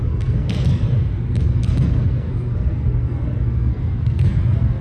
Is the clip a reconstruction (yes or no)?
yes